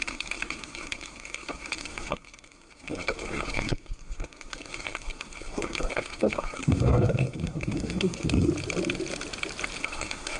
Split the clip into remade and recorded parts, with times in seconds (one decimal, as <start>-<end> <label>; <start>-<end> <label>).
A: 0.0-8.5 remade; 8.5-9.8 recorded; 9.8-10.4 remade